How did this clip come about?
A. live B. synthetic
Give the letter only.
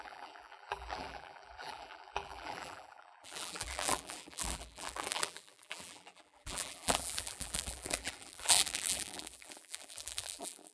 B